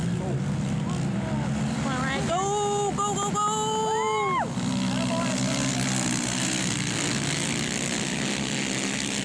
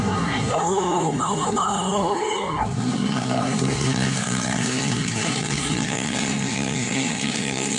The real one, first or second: first